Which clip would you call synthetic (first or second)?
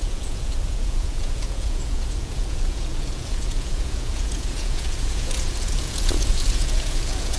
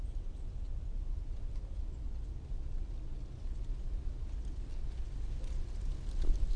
first